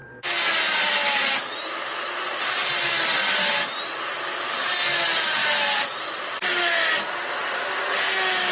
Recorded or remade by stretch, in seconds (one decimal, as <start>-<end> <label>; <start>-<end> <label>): 0.0-8.5 recorded